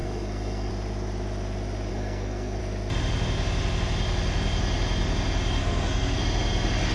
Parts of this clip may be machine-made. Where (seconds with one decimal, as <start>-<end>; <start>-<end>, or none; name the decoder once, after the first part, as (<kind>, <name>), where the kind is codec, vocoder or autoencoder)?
0.0-0.7 (codec, SNAC); 1.9-2.6; 5.6-6.2